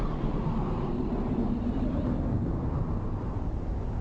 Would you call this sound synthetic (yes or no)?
no